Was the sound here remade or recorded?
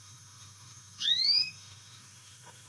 remade